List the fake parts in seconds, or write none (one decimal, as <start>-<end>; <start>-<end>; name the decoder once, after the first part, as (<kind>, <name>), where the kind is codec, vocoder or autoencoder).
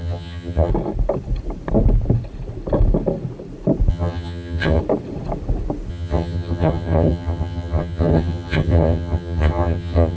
0.0-0.7 (vocoder, HiFi-GAN); 3.9-4.8; 5.9-10.2